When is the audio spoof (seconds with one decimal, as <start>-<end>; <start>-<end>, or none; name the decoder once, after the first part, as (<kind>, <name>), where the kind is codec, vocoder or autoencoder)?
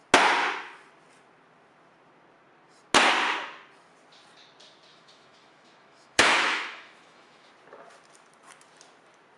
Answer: 4.9-7.5 (autoencoder, DAC-VAE)